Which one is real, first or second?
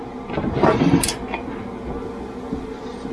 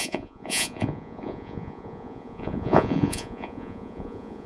first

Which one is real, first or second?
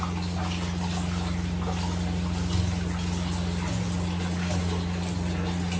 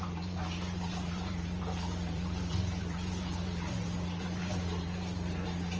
first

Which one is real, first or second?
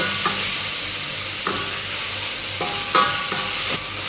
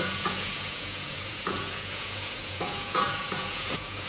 first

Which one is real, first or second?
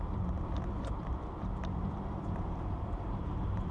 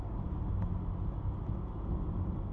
second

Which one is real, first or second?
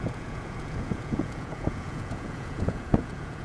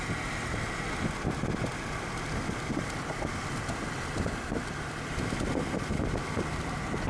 second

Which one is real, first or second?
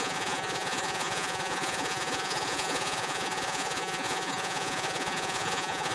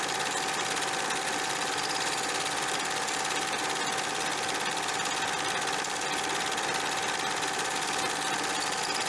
second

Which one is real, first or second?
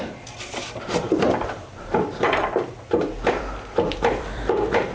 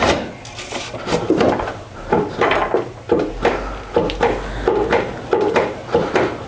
second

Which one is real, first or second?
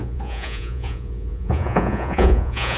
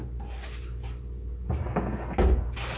second